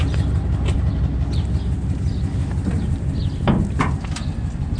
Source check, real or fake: real